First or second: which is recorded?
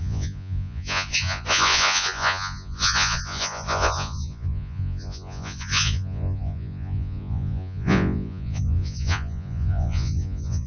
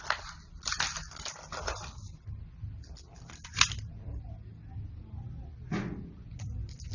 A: second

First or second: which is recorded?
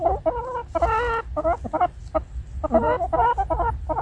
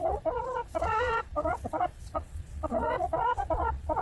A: first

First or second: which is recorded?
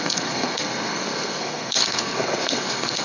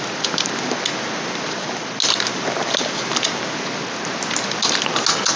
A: second